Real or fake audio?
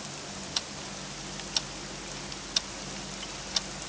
real